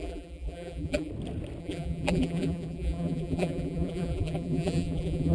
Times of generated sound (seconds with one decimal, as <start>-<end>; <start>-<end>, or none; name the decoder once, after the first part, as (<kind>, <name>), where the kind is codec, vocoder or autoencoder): 0.0-1.1 (vocoder, BigVGAN v2); 1.6-5.3

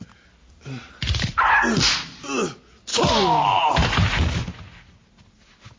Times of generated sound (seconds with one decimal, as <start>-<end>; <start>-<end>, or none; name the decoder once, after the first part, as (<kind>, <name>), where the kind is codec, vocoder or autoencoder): 0.4-1.5 (vocoder, BigVGAN v2)

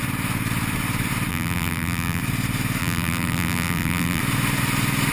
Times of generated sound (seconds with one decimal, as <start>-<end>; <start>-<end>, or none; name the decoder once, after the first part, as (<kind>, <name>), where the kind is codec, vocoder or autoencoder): 1.3-2.2 (vocoder, BigVGAN v2); 2.8-4.2

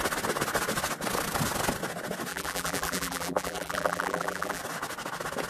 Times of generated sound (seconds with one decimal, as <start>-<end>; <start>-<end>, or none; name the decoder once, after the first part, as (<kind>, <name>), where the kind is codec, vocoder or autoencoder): 2.3-4.6 (vocoder, BigVGAN v2)

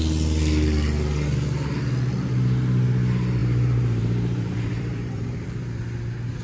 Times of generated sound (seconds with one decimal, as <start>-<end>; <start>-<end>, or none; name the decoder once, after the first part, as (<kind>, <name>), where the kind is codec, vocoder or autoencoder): 3.4-5.8 (vocoder, BigVGAN v2)